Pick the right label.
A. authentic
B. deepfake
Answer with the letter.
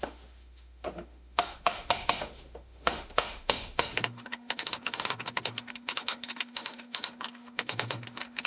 B